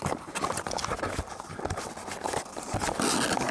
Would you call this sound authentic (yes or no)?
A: yes